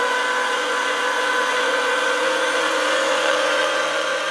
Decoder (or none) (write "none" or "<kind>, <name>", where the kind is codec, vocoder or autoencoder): vocoder, Vocos